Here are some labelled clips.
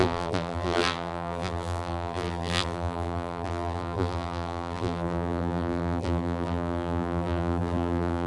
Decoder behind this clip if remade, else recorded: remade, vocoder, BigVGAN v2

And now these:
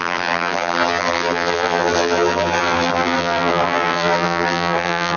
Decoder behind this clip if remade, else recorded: remade, vocoder, BigVGAN v2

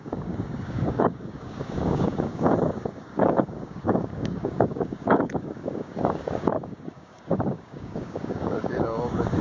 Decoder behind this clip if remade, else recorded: remade, codec, DAC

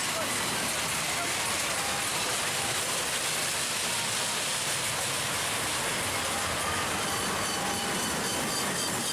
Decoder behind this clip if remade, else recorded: recorded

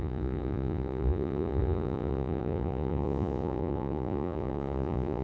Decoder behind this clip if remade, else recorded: remade, vocoder, Vocos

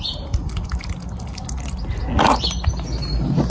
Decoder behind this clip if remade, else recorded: recorded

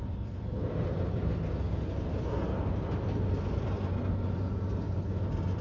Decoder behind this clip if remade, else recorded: recorded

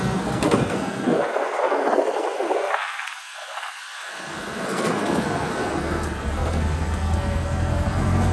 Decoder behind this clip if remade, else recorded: remade, codec, SNAC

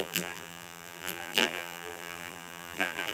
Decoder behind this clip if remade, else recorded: remade, vocoder, BigVGAN v2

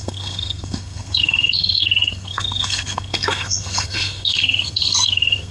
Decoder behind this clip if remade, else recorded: remade, codec, SNAC